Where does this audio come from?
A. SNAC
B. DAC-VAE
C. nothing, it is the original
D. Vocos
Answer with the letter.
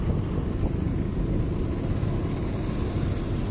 C